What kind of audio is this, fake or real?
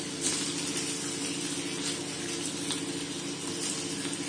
real